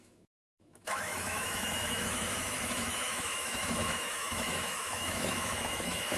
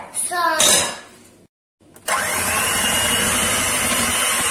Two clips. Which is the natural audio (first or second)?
second